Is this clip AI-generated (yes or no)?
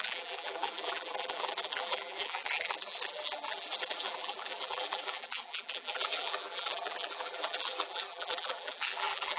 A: yes